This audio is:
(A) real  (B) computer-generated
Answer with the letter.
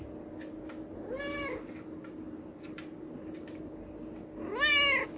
A